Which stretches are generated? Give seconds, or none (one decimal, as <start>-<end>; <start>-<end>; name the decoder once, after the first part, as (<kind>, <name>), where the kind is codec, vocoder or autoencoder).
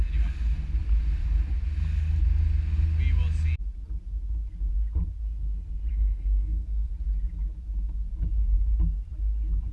5.9-6.9 (codec, SNAC)